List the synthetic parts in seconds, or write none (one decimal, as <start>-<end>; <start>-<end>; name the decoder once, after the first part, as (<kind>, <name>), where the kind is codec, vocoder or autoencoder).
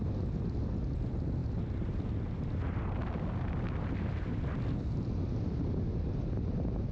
none